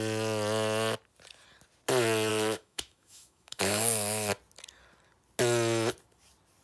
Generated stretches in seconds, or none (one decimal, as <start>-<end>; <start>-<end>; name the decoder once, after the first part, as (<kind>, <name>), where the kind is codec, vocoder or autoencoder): 2.3-4.3 (autoencoder, DAC-VAE)